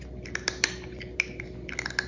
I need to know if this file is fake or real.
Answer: real